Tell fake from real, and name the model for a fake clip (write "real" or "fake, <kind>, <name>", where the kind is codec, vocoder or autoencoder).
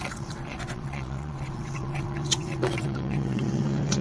fake, vocoder, WaveNeXt